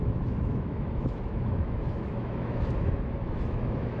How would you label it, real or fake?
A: fake